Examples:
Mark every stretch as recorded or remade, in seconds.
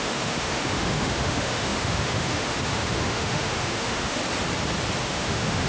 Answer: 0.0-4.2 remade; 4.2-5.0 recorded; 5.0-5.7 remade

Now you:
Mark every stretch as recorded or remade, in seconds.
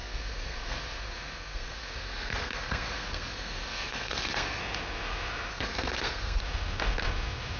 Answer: 0.0-4.6 remade; 4.6-5.5 recorded; 5.5-6.4 remade; 6.4-7.6 recorded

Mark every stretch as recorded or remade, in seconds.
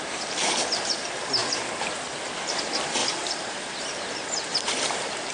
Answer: 0.0-3.0 recorded; 3.0-3.8 remade; 3.8-4.5 recorded; 4.5-5.3 remade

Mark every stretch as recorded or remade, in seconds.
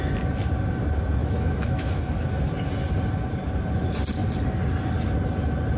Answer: 0.0-1.2 recorded; 1.2-2.2 remade; 2.2-5.8 recorded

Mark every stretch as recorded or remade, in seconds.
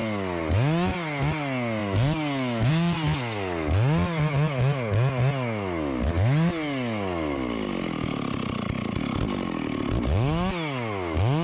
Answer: 0.0-11.4 recorded